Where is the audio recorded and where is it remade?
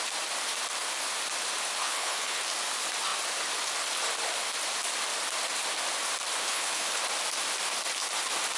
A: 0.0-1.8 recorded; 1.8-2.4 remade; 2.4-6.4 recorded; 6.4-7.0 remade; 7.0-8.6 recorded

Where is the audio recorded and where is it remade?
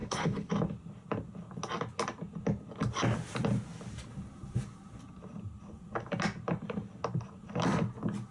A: 0.0-0.5 remade; 0.5-8.3 recorded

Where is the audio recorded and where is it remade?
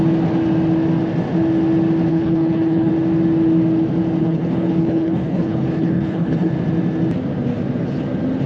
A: 0.0-2.1 recorded; 2.1-2.9 remade; 2.9-4.2 recorded; 4.2-6.5 remade; 6.5-8.5 recorded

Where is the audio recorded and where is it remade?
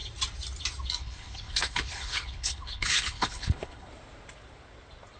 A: 0.0-1.0 recorded; 1.0-3.9 remade; 3.9-5.2 recorded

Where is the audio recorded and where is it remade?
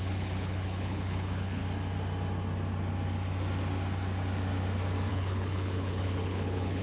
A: 0.0-1.6 remade; 1.6-5.1 recorded; 5.1-6.8 remade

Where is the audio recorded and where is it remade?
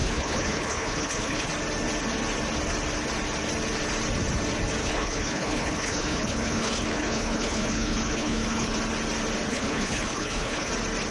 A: 0.0-1.5 remade; 1.5-4.8 recorded; 4.8-8.8 remade; 8.8-9.5 recorded; 9.5-10.7 remade; 10.7-11.1 recorded